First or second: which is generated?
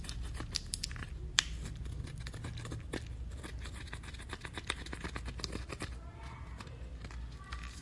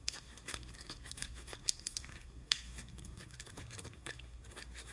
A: second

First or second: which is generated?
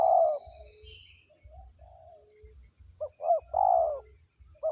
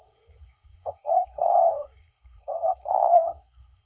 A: second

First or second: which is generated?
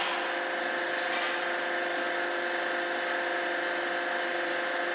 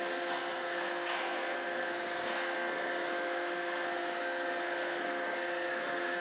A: second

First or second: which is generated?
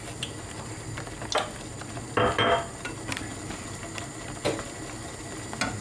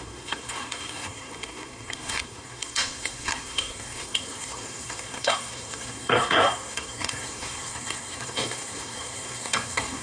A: second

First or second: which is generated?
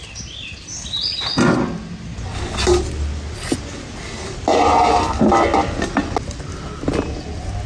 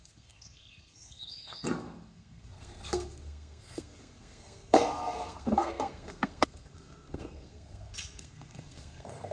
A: second